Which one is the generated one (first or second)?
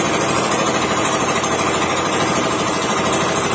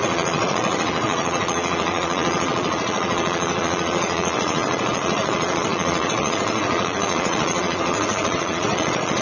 second